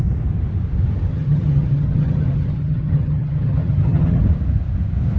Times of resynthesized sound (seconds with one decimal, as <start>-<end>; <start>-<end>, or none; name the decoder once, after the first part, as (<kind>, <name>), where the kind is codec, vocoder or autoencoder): 1.1-4.2 (vocoder, HiFi-GAN)